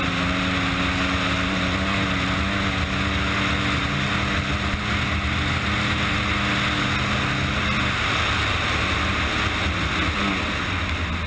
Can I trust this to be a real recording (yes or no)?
yes